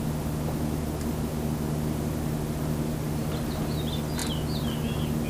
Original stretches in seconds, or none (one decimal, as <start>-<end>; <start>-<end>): 0.0-5.3